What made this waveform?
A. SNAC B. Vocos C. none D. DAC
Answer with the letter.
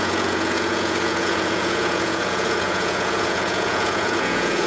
B